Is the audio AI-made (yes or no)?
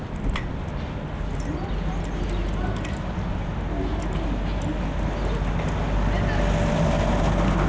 no